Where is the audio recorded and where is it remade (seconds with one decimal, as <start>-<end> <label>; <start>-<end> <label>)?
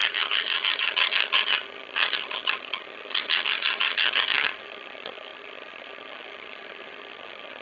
0.0-7.6 remade